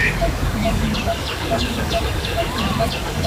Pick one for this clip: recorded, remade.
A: remade